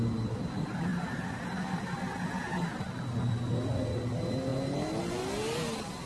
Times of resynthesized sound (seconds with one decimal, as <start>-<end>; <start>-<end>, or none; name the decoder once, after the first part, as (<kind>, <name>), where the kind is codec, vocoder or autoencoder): none